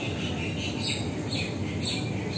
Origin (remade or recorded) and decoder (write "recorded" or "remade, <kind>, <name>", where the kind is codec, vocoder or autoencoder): recorded